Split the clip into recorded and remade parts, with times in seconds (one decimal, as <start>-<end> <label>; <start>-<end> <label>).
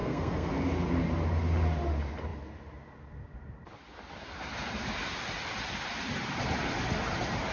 0.0-0.5 remade; 0.5-7.5 recorded